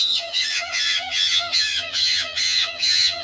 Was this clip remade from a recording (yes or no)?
yes